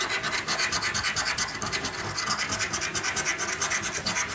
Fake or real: real